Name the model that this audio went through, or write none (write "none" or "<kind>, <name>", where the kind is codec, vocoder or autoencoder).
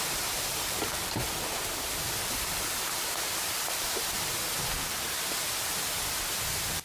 vocoder, BigVGAN v2